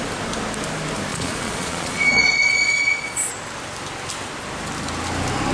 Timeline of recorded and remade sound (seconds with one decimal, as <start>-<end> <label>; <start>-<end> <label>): 0.0-1.1 recorded; 1.1-3.3 remade; 3.3-5.5 recorded